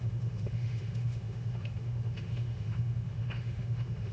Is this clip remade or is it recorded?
remade